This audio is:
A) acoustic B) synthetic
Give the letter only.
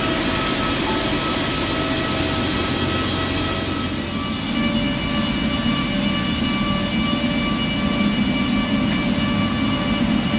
A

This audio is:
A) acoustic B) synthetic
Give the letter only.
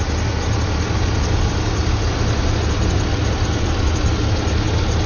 A